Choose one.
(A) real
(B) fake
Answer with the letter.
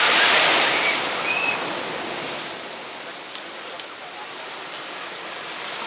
A